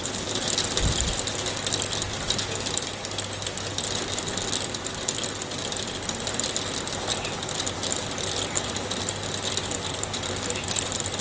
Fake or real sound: real